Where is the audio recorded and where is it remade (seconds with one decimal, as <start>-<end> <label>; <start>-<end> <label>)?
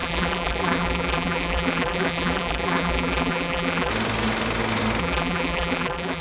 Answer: 0.0-3.9 remade; 3.9-5.0 recorded; 5.0-6.2 remade